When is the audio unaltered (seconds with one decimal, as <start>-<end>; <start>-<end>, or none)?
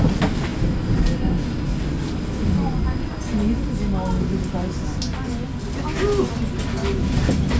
0.0-7.6